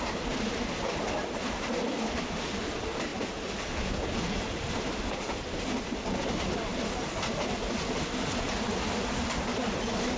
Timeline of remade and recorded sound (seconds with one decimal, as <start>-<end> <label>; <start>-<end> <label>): 0.0-10.2 recorded